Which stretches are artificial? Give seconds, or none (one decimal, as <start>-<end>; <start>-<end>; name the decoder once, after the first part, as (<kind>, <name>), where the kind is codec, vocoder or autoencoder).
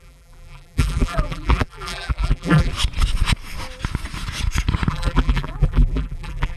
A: 0.0-2.7 (vocoder, BigVGAN v2); 4.9-6.6